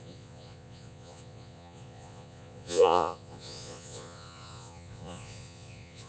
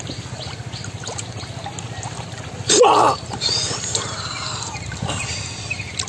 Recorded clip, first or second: second